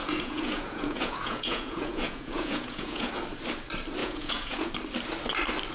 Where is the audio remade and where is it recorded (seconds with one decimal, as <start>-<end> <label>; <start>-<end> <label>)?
0.0-3.1 remade; 3.1-4.0 recorded; 4.0-4.7 remade; 4.7-5.7 recorded